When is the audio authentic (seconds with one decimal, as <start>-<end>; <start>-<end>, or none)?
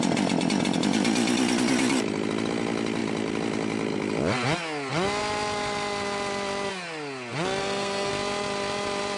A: 0.0-7.6; 8.1-9.2